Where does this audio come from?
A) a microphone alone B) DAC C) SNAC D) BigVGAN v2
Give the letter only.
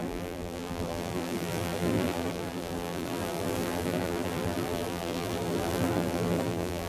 D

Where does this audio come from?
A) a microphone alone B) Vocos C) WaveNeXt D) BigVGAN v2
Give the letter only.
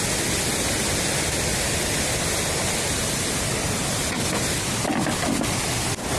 A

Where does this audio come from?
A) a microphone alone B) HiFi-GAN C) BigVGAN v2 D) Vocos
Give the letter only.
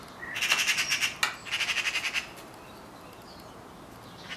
A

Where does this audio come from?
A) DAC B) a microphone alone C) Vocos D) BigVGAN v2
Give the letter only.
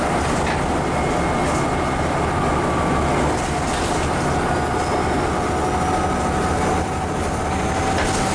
B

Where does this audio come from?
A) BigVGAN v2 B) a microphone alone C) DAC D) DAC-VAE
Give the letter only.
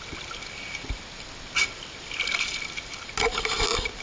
B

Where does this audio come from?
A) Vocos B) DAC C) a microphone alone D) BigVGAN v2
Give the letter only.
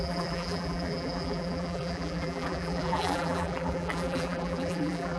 D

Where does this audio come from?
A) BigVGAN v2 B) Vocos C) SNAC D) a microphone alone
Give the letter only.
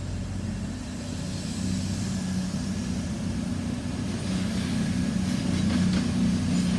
D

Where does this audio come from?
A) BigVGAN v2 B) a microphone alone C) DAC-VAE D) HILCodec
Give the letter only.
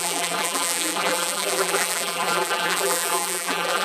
A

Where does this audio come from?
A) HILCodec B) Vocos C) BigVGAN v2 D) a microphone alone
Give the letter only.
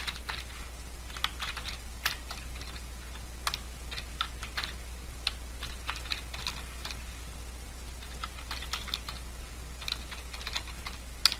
D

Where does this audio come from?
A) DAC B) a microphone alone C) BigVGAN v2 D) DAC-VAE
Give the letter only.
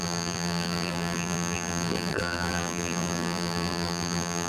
C